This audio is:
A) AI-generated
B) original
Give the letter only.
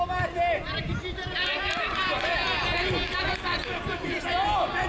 B